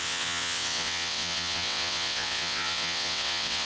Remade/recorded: remade